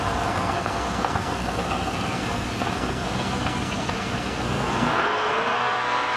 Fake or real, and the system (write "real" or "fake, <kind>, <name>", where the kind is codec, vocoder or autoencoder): fake, codec, SNAC